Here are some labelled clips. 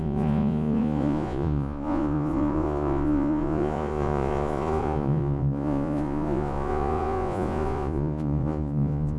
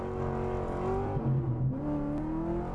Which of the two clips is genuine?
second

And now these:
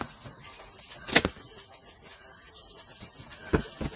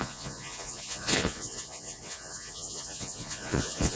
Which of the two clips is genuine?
first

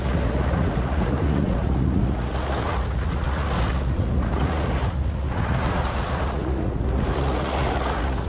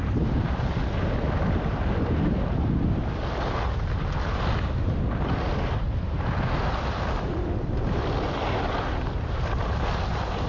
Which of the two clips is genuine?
second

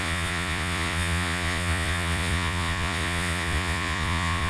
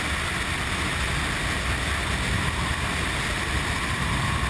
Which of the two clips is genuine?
second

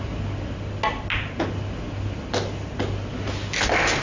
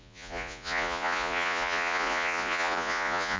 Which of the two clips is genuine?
first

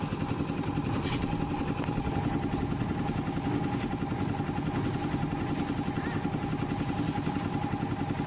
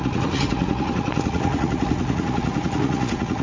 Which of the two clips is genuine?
first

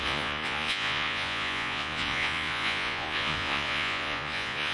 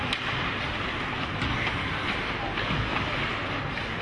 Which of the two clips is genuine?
second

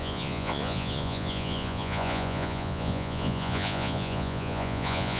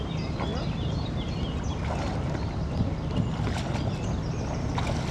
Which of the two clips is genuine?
second